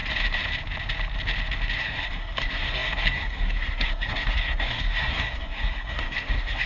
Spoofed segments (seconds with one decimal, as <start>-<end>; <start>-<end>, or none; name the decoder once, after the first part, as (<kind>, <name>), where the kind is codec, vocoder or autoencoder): 1.8-6.7 (codec, SNAC)